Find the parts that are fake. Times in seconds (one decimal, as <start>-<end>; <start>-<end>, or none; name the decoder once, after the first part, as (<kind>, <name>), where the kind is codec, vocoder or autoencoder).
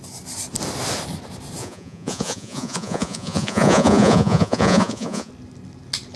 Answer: 1.6-5.3 (vocoder, Vocos)